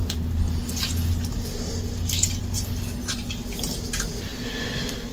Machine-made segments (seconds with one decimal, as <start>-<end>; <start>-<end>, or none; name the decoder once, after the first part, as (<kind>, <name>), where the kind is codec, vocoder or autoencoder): none